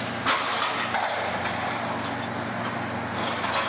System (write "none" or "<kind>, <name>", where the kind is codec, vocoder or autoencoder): none